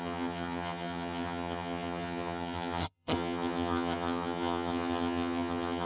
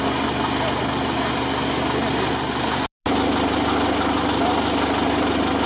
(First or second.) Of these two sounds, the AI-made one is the first